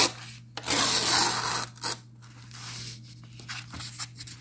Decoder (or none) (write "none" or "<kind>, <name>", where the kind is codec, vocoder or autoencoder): none